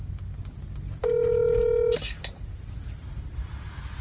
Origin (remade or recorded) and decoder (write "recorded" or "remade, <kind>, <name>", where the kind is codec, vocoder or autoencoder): recorded